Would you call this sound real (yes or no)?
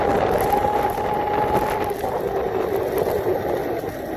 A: yes